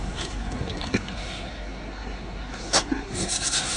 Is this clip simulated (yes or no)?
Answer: yes